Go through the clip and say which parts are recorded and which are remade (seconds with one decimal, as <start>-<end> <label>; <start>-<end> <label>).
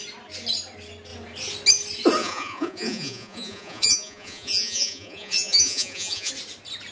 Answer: 0.0-2.2 recorded; 2.2-6.3 remade; 6.3-6.9 recorded